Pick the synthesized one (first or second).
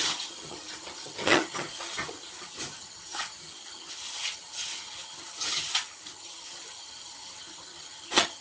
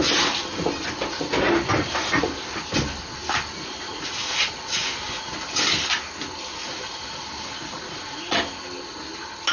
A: first